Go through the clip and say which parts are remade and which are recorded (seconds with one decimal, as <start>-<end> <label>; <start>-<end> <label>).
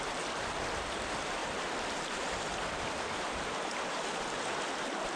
0.0-5.2 recorded